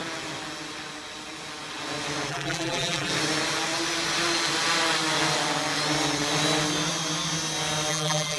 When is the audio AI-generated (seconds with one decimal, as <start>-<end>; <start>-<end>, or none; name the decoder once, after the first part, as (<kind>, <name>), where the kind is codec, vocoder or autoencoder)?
2.3-3.1 (vocoder, BigVGAN v2); 7.9-8.4